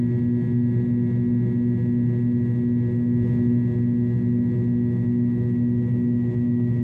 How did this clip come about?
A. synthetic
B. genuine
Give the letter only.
B